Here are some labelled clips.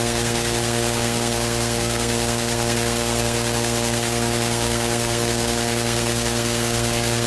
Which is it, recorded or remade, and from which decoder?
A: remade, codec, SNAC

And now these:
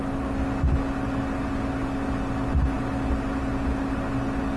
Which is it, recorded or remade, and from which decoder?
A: recorded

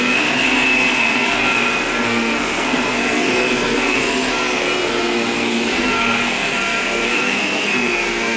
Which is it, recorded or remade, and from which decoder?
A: remade, codec, SNAC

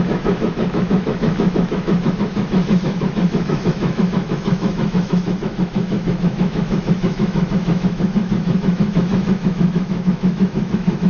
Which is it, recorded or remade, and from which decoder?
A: remade, autoencoder, DAC-VAE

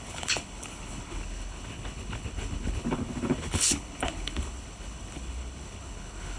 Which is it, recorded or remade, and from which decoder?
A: remade, codec, HILCodec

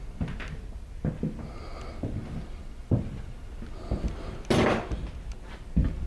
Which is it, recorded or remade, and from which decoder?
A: recorded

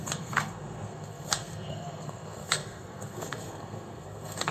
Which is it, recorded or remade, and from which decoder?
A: remade, codec, SNAC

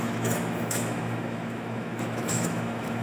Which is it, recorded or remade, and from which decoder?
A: remade, autoencoder, DAC-VAE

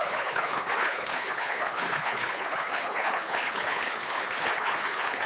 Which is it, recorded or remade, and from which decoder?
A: remade, codec, HILCodec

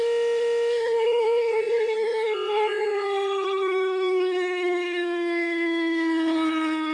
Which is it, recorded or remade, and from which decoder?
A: remade, codec, SNAC